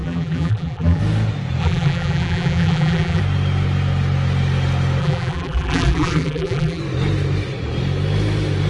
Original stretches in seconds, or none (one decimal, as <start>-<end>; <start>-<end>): 1.0-1.6; 3.2-5.0; 6.8-8.7